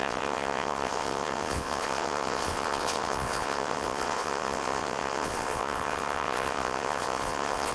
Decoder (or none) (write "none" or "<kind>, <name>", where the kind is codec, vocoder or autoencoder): vocoder, WaveNeXt